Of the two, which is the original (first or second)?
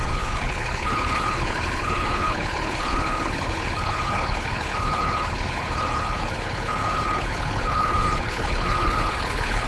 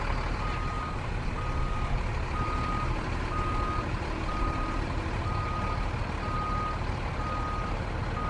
second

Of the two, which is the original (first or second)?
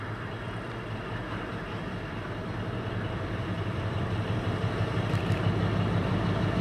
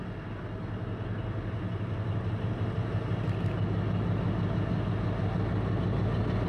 second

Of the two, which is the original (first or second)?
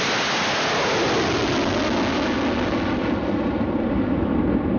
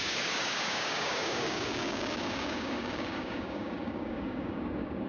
first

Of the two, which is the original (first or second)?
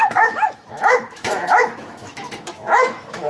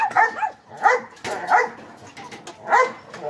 second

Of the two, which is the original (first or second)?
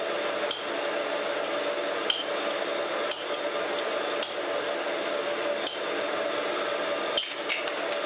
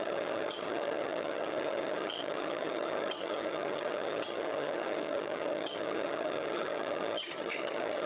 first